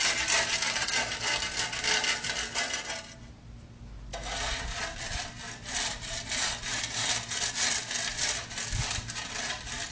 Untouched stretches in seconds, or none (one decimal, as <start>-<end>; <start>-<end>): 0.0-9.9